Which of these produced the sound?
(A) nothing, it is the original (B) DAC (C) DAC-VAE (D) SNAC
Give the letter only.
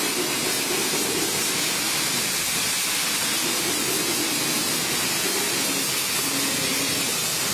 A